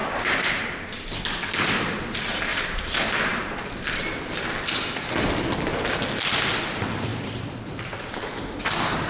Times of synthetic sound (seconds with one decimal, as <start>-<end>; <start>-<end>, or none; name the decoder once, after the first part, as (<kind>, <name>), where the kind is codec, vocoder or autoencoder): 0.0-1.2 (vocoder, BigVGAN v2); 2.5-3.7; 7.1-8.4